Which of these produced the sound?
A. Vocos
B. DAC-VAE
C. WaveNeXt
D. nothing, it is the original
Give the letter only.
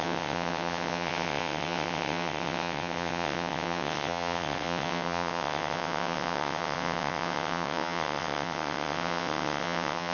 C